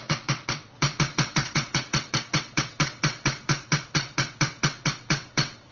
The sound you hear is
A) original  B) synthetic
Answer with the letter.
B